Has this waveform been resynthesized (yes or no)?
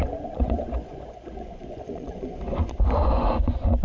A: yes